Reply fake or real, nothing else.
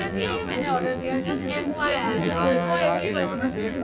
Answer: fake